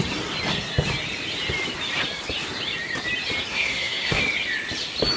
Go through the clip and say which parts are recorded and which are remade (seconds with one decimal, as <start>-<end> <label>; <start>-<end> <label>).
0.0-3.5 recorded; 3.5-4.2 remade; 4.2-5.2 recorded